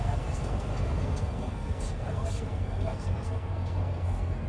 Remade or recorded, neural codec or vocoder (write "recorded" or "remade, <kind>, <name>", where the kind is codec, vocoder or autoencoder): remade, codec, SNAC